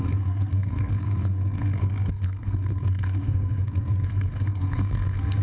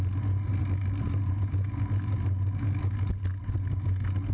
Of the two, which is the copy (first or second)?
first